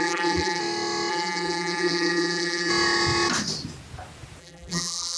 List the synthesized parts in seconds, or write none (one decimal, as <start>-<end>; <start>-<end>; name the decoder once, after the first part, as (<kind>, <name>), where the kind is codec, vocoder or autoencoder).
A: 0.0-0.6 (vocoder, BigVGAN v2); 1.1-2.7; 4.4-5.2